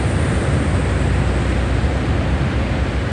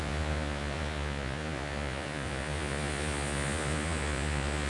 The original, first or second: first